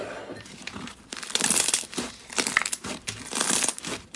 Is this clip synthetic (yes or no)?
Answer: yes